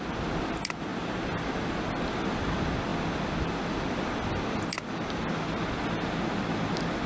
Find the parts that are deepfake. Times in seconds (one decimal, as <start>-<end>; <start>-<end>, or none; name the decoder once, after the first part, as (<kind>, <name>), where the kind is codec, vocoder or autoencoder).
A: none